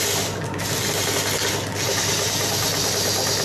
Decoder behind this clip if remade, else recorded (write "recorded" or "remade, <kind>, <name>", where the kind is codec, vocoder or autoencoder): recorded